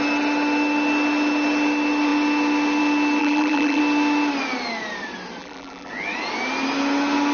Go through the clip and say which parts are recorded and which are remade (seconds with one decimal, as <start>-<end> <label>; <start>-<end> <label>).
0.0-3.2 recorded; 3.2-3.8 remade; 3.8-5.4 recorded; 5.4-5.9 remade; 5.9-7.3 recorded